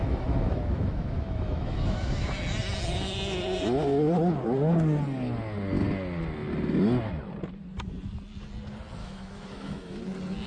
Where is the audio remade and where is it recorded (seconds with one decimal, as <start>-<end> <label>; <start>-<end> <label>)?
0.0-2.3 remade; 2.3-9.0 recorded; 9.0-10.0 remade; 10.0-10.5 recorded